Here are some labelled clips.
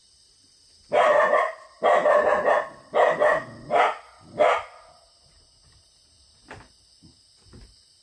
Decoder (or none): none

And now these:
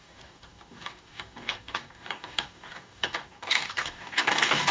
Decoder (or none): codec, DAC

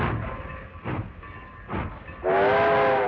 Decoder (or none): none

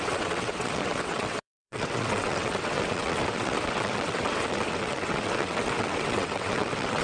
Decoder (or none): vocoder, WaveNeXt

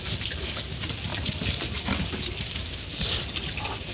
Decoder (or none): none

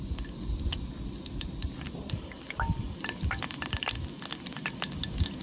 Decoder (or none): none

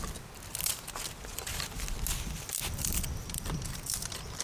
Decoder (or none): none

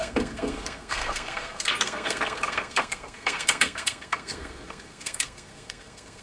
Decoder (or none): codec, SNAC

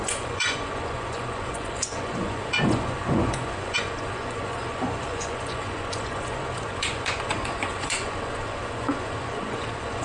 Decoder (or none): vocoder, Vocos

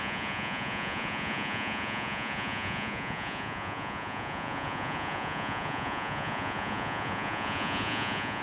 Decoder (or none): vocoder, Vocos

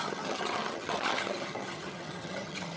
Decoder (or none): vocoder, HiFi-GAN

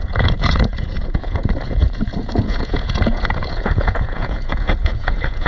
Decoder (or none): vocoder, Vocos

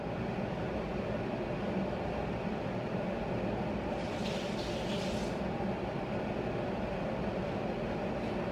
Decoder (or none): none